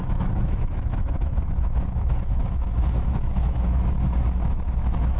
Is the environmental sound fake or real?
fake